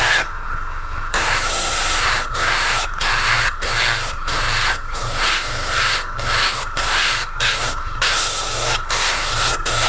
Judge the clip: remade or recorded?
remade